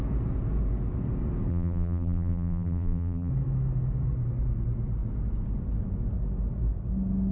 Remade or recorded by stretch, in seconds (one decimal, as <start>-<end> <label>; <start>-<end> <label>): 0.0-1.5 recorded; 1.5-3.3 remade; 3.3-7.3 recorded